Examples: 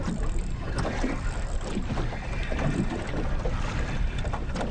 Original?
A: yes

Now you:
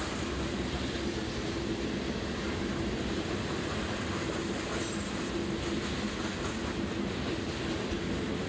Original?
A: yes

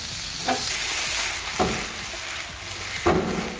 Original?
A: yes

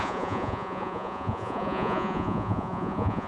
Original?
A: no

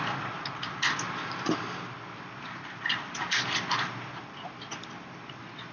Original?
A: yes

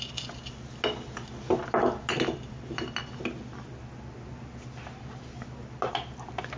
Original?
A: yes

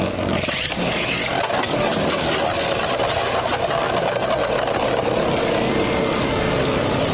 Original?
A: yes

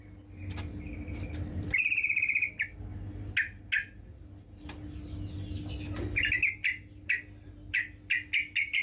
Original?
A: yes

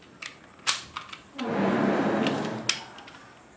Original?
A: yes